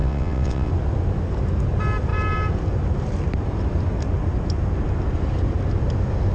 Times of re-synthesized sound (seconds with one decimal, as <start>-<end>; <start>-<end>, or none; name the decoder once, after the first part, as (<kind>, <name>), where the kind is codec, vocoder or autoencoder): 0.0-0.7 (vocoder, WaveNeXt)